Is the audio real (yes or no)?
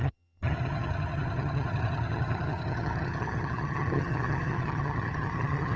no